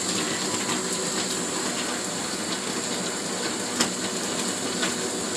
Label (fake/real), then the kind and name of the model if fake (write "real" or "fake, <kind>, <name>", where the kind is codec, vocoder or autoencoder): real